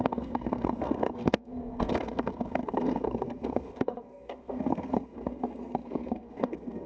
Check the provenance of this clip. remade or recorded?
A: remade